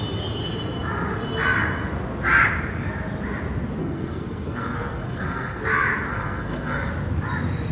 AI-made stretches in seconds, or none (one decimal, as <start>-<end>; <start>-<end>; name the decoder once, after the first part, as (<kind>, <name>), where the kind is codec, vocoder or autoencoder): 3.8-5.6 (codec, SNAC); 6.1-6.9